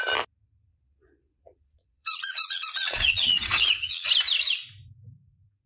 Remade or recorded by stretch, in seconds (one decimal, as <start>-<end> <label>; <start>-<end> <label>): 0.0-0.7 recorded; 0.7-4.1 remade; 4.1-5.7 recorded